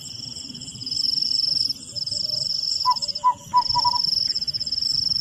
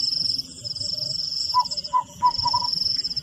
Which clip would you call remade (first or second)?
second